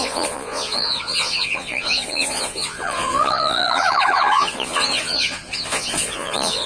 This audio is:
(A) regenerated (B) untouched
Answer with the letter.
A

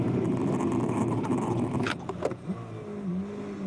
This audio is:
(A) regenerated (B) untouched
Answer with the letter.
B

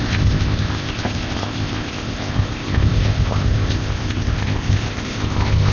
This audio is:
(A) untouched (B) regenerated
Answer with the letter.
B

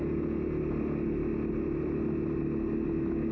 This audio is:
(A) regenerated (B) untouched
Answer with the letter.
B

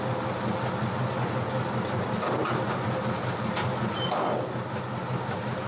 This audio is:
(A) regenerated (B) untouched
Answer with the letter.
B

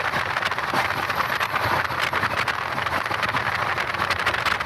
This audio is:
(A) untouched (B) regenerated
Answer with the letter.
A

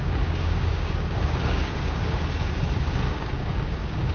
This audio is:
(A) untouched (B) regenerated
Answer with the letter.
B